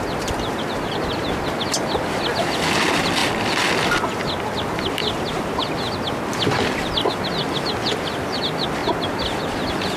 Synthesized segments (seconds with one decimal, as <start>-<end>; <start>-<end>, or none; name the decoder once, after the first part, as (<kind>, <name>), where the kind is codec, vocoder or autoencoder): none

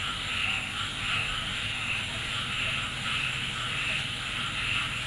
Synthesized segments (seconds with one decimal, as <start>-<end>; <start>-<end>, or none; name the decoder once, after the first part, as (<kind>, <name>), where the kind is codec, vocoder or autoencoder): 0.0-0.4 (vocoder, BigVGAN v2); 1.1-5.1

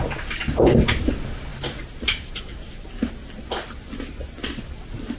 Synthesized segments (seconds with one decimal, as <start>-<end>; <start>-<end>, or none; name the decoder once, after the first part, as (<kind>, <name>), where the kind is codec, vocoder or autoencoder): none

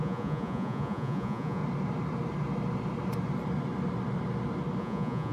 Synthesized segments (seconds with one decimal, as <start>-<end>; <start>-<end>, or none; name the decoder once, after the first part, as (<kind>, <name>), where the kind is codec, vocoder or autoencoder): 0.0-1.6 (vocoder, Vocos); 4.8-5.3

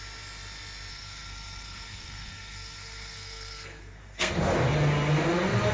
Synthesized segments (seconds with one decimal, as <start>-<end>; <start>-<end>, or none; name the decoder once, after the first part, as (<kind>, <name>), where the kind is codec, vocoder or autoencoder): 0.9-4.3 (codec, SNAC)